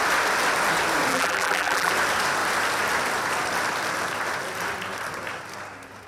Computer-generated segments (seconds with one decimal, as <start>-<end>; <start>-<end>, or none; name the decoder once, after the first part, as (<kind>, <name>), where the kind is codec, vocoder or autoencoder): 1.1-1.9 (vocoder, BigVGAN v2)